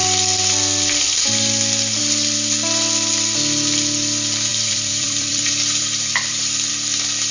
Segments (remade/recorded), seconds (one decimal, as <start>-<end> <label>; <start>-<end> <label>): 0.0-4.5 recorded; 4.5-6.7 remade; 6.7-7.3 recorded